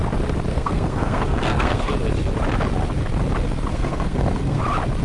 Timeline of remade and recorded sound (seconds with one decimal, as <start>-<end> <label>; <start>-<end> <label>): 0.0-0.5 recorded; 0.5-1.9 remade; 1.9-3.7 recorded; 3.7-4.6 remade; 4.6-5.0 recorded

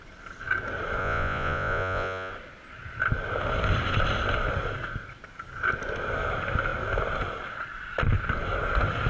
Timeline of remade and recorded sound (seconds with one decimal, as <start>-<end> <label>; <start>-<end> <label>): 0.0-1.0 recorded; 1.0-2.3 remade; 2.3-9.1 recorded

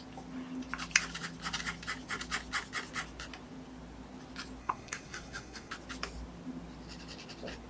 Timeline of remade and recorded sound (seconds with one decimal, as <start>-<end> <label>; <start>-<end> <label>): 0.0-4.6 recorded; 4.6-5.7 remade; 5.7-7.7 recorded

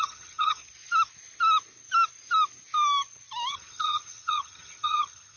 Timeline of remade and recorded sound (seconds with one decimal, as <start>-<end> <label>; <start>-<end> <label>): 0.0-0.6 remade; 0.6-3.5 recorded; 3.5-5.4 remade